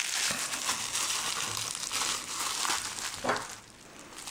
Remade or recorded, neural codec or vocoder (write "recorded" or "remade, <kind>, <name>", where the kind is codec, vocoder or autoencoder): recorded